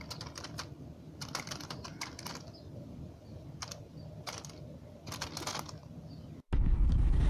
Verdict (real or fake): real